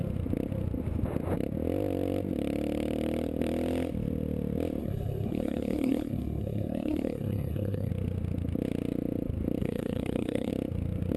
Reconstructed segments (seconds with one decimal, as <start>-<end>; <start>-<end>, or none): 4.8-7.9; 9.6-10.5